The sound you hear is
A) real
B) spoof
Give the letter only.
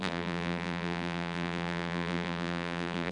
B